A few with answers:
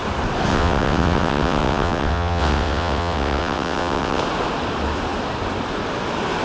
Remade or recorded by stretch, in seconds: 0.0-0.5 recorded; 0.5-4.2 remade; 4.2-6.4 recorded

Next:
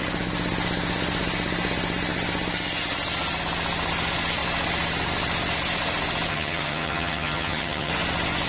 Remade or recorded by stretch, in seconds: 0.0-6.3 recorded; 6.3-7.9 remade; 7.9-8.5 recorded

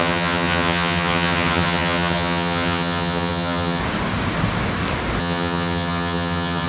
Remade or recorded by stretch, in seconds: 0.0-3.8 remade; 3.8-5.2 recorded; 5.2-6.7 remade

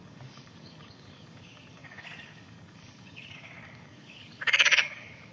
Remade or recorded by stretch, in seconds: 0.0-5.3 remade

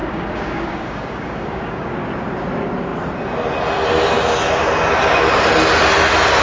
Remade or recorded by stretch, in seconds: 0.0-1.9 remade; 1.9-6.4 recorded

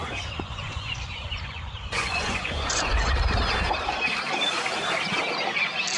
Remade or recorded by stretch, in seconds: 0.0-3.1 remade; 3.1-6.0 recorded

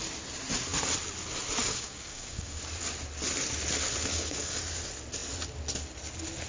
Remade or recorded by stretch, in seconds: 0.0-1.6 recorded; 1.6-2.6 remade; 2.6-4.1 recorded; 4.1-4.6 remade; 4.6-6.5 recorded